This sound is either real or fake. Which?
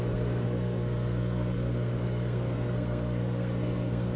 fake